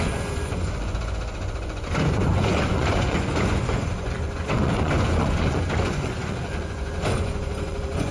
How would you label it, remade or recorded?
remade